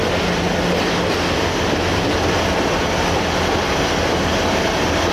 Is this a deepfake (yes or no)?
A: no